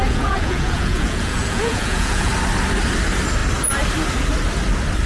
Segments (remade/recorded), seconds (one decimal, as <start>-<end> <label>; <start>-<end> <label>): 0.0-2.3 remade; 2.3-5.1 recorded